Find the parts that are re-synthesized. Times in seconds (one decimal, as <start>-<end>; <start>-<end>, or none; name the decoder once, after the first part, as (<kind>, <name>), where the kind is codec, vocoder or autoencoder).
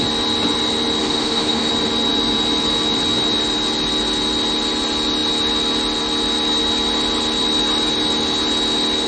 1.0-1.7 (autoencoder, DAC-VAE)